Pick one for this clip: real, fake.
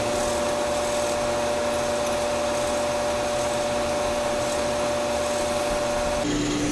real